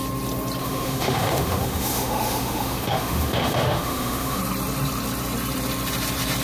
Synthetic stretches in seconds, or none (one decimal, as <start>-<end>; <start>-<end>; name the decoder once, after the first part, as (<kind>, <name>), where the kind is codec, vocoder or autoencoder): 0.6-4.4 (autoencoder, DAC-VAE)